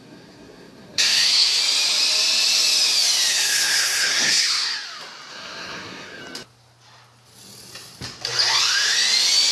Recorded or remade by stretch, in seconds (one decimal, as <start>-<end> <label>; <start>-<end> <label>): 0.0-1.6 remade; 1.6-3.3 recorded; 3.3-4.7 remade; 4.7-5.3 recorded; 5.3-6.2 remade; 6.2-9.5 recorded